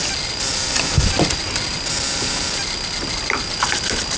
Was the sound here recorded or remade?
recorded